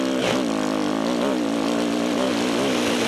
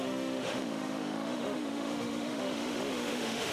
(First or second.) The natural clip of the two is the first